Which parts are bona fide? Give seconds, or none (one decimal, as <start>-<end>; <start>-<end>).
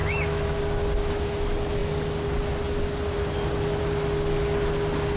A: 0.6-5.2